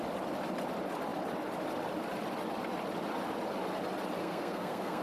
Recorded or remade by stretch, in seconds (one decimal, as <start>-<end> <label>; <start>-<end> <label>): 0.0-4.2 recorded; 4.2-5.0 remade